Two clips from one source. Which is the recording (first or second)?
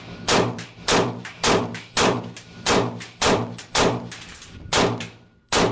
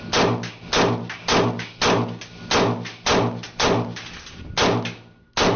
second